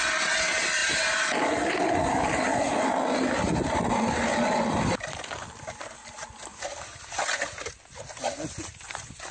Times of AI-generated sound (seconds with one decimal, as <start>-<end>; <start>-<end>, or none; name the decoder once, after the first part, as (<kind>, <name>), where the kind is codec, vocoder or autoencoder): none